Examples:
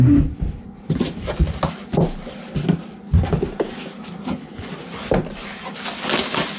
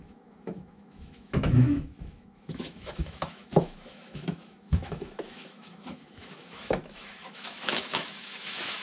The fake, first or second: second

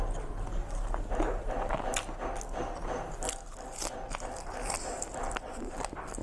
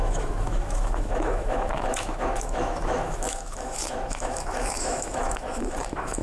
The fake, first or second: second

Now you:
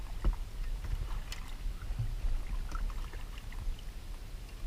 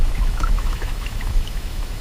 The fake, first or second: second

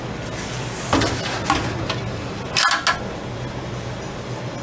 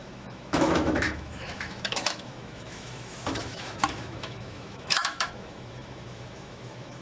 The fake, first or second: second